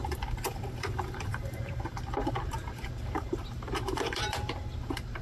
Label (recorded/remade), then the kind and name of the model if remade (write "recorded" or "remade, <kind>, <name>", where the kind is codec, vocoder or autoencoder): remade, vocoder, BigVGAN v2